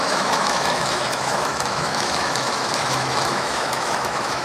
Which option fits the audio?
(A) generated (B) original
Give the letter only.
A